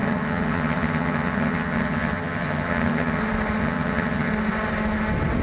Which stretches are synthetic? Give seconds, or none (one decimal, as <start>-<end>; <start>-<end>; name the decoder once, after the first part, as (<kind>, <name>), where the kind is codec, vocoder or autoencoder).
0.0-3.2 (vocoder, HiFi-GAN); 3.6-4.3